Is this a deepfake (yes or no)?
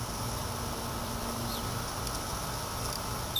yes